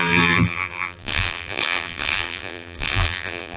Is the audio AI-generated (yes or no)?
yes